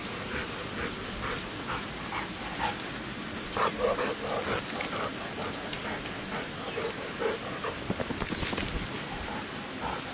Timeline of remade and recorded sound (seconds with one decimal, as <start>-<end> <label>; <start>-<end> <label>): 0.0-10.1 recorded